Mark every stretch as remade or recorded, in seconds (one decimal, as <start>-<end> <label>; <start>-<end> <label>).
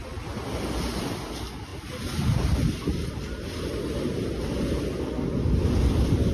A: 0.0-6.3 recorded